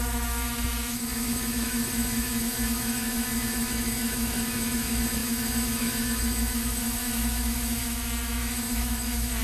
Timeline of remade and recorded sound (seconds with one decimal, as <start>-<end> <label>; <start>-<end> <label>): 0.0-9.4 remade